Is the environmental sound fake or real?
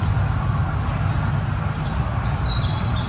real